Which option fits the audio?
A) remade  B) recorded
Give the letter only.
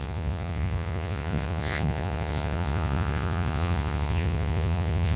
A